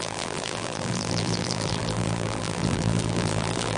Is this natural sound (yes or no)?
no